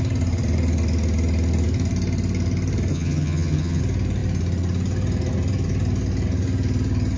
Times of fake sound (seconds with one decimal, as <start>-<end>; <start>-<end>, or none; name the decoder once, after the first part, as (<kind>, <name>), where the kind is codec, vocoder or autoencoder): 2.9-3.8 (vocoder, HiFi-GAN)